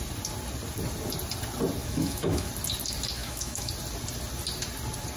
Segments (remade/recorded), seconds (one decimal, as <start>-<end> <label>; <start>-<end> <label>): 0.0-1.8 recorded; 1.8-2.5 remade; 2.5-3.2 recorded; 3.2-3.7 remade; 3.7-5.2 recorded

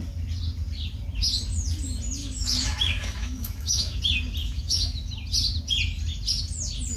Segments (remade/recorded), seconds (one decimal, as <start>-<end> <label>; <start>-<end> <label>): 0.0-2.2 recorded; 2.2-4.0 remade; 4.0-4.4 recorded; 4.4-5.1 remade; 5.1-7.0 recorded

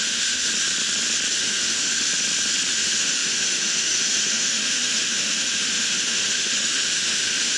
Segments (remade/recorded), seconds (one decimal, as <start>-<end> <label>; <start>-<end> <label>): 0.0-0.5 remade; 0.5-1.3 recorded; 1.3-2.1 remade; 2.1-2.7 recorded; 2.7-7.6 remade

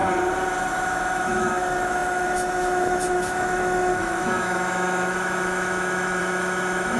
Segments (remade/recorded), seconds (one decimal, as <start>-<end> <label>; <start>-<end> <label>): 0.0-0.7 recorded; 0.7-7.0 remade

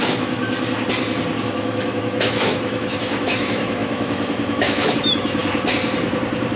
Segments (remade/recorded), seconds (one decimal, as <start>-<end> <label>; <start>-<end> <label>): 0.0-0.4 remade; 0.4-1.4 recorded; 1.4-5.4 remade; 5.4-6.6 recorded

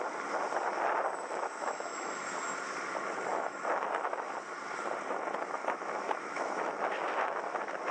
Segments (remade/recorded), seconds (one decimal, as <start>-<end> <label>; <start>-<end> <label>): 0.0-1.3 recorded; 1.3-2.2 remade; 2.2-3.3 recorded; 3.3-4.3 remade; 4.3-5.6 recorded; 5.6-7.9 remade